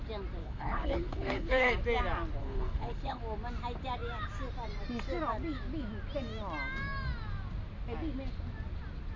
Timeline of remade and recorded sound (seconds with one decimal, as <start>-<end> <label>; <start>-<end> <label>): 0.0-0.4 recorded; 0.4-1.7 remade; 1.7-2.4 recorded; 2.4-3.2 remade; 3.2-9.2 recorded